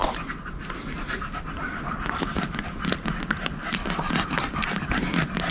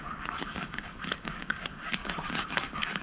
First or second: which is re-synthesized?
second